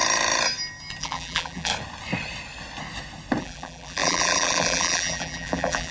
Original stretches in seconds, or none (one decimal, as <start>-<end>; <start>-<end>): 0.0-1.0; 1.7-3.4